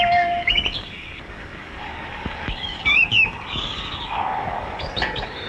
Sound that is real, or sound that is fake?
fake